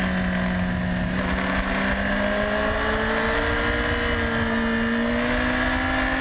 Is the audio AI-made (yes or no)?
no